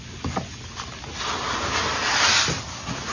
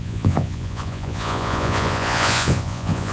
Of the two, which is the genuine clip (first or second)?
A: first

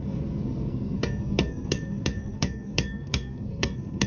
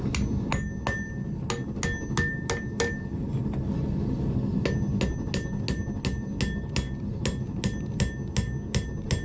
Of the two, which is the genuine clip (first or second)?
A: second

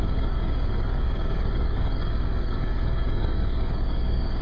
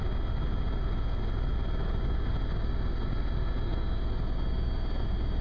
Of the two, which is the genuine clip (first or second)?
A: second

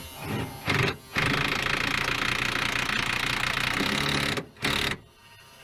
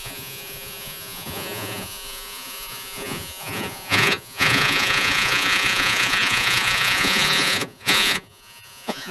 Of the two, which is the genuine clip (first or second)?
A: first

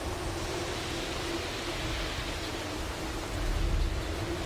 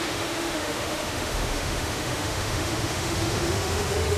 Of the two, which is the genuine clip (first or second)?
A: first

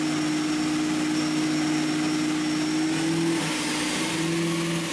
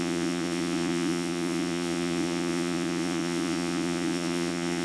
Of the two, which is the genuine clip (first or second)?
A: first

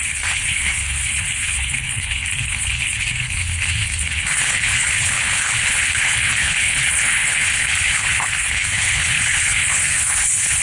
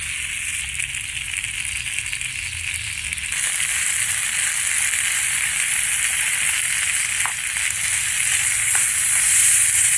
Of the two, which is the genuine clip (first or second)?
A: second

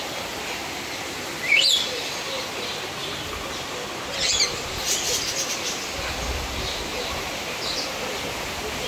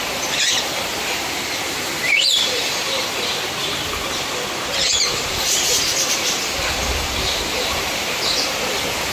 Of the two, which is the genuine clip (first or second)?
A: first